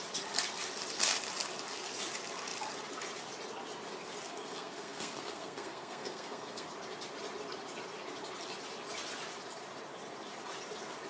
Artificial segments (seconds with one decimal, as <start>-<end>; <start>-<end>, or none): 4.3-6.7